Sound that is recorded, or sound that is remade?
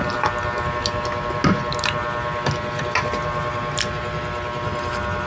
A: recorded